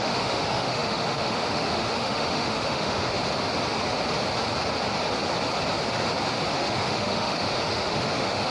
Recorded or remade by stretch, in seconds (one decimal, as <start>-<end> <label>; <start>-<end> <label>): 0.0-3.2 remade; 3.2-6.5 recorded; 6.5-8.5 remade